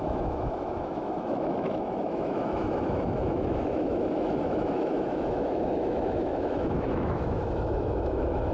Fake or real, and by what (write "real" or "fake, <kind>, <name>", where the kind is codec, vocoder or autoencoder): fake, autoencoder, DAC-VAE